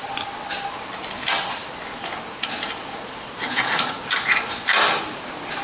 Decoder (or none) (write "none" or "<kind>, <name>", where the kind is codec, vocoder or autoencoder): none